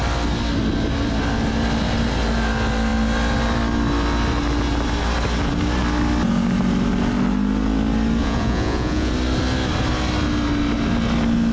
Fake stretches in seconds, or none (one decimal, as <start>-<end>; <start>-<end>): 8.2-9.1